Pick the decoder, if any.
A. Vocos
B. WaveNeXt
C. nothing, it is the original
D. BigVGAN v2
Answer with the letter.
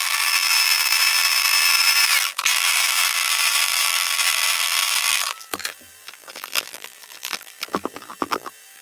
D